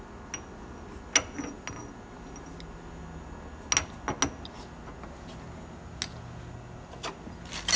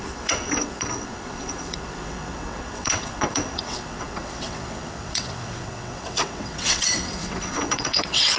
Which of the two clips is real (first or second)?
first